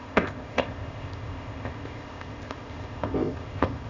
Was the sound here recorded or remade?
remade